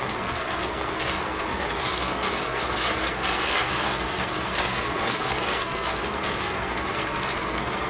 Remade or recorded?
remade